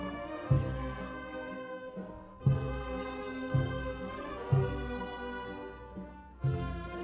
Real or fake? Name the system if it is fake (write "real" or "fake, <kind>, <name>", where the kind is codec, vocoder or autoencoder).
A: fake, codec, SNAC